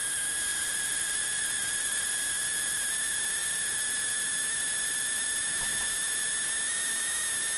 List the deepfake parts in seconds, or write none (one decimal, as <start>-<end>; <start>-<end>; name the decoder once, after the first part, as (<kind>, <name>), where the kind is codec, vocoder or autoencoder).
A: 0.5-2.1 (vocoder, Vocos)